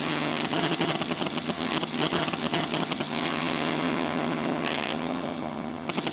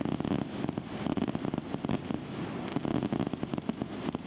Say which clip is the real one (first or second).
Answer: second